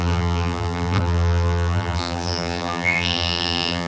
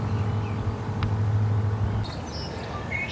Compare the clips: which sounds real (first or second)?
second